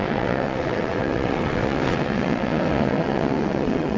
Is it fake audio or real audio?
fake